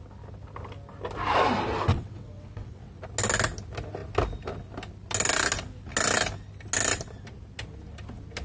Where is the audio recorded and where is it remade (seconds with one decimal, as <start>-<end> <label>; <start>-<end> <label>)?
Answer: 0.0-1.9 recorded; 1.9-3.0 remade; 3.0-8.4 recorded